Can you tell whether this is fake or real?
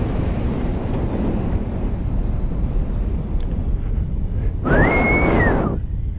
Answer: real